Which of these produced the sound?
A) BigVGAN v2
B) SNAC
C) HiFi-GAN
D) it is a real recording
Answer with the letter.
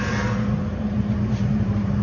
A